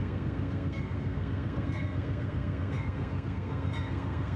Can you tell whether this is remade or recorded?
remade